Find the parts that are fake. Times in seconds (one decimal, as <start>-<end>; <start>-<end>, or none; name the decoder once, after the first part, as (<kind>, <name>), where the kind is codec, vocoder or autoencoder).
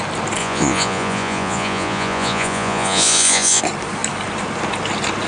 0.4-3.6 (vocoder, Vocos)